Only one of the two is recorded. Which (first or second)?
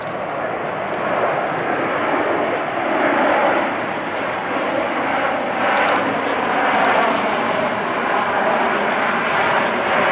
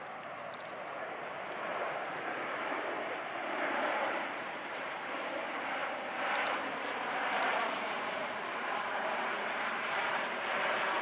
first